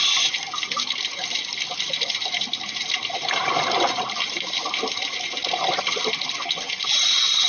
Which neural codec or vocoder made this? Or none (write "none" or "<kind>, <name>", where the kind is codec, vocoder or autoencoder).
none